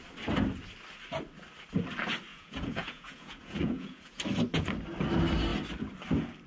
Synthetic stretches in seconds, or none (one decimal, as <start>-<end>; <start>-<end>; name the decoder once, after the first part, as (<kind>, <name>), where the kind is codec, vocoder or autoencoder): 2.3-4.2 (vocoder, Vocos)